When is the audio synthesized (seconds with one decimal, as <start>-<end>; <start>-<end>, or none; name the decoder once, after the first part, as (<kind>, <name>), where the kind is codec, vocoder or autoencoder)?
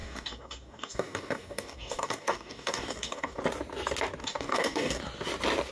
0.0-3.4 (codec, DAC); 4.2-5.0